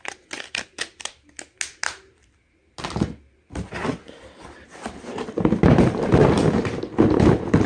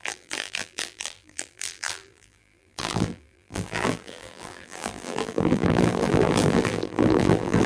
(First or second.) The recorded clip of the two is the first